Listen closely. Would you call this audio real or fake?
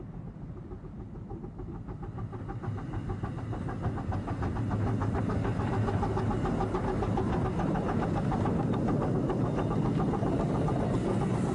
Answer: real